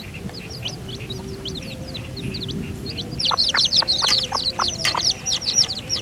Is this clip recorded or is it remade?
remade